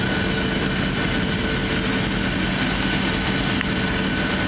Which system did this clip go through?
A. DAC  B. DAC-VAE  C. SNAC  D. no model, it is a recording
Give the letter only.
D